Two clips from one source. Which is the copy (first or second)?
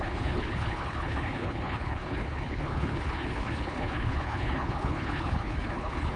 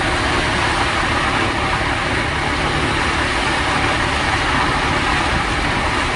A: first